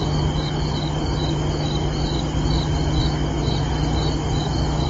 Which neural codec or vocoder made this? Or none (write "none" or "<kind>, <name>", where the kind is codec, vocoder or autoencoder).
none